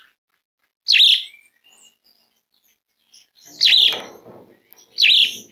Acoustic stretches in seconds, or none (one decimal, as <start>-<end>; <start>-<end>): 0.0-5.5